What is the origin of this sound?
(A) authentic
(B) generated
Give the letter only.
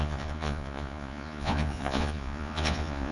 B